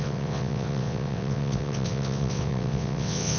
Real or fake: fake